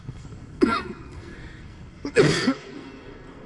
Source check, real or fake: fake